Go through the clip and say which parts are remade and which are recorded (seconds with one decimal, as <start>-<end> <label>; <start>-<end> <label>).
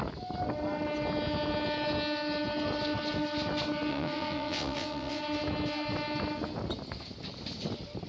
0.0-3.9 recorded; 3.9-5.2 remade; 5.2-8.1 recorded